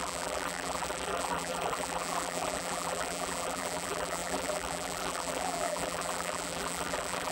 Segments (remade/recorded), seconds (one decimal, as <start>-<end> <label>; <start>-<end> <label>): 0.0-7.3 remade